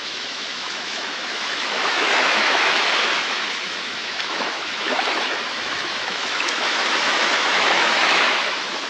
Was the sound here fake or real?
fake